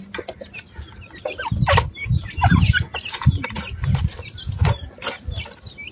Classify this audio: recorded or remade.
recorded